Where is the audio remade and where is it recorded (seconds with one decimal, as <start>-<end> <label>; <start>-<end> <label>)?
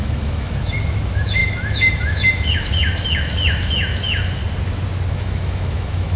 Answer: 0.0-4.4 remade; 4.4-5.1 recorded; 5.1-6.2 remade